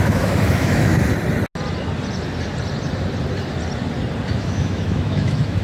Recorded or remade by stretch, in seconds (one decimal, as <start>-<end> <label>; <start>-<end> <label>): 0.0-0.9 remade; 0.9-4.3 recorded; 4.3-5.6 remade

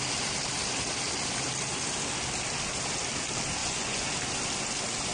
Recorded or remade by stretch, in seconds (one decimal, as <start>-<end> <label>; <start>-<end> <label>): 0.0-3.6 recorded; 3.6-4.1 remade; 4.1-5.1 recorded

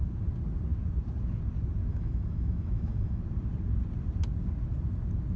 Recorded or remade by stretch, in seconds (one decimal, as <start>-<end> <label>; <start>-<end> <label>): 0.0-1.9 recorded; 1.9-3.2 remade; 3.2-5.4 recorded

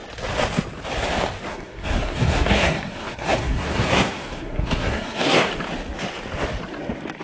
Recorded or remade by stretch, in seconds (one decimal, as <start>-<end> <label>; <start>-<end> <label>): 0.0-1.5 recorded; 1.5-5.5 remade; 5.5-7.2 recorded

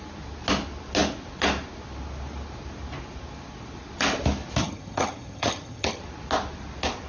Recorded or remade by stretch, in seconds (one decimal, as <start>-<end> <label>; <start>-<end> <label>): 0.0-4.6 recorded; 4.6-6.0 remade; 6.0-7.1 recorded

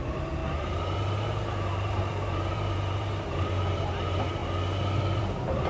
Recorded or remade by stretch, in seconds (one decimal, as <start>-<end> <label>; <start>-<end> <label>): 0.0-4.4 remade; 4.4-5.2 recorded; 5.2-5.7 remade

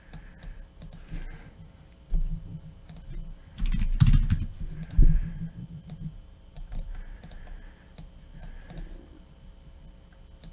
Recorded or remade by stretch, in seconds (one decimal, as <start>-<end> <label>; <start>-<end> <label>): 0.0-4.5 recorded; 4.5-7.4 remade; 7.4-10.5 recorded